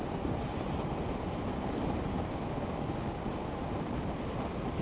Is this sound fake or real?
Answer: real